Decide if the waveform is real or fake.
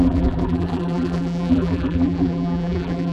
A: fake